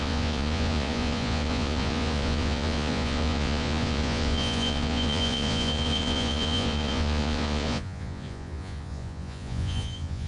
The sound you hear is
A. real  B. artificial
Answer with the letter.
B